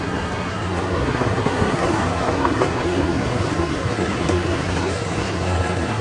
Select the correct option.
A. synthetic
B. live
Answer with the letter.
A